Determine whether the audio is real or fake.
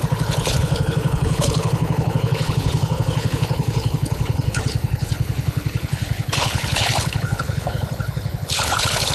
fake